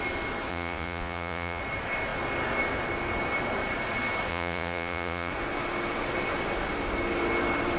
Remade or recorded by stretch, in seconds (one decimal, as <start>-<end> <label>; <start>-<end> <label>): 0.0-0.5 recorded; 0.5-1.6 remade; 1.6-4.3 recorded; 4.3-5.3 remade; 5.3-7.8 recorded